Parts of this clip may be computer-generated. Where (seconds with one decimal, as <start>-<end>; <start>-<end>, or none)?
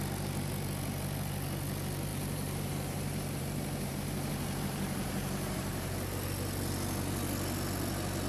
2.1-5.9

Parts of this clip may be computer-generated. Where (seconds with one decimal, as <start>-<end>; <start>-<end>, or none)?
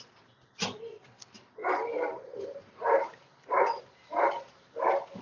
none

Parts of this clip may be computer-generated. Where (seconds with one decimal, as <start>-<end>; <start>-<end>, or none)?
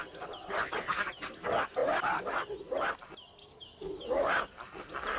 3.4-4.3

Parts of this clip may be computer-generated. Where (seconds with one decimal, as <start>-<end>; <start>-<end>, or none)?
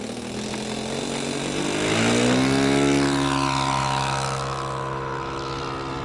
3.8-5.6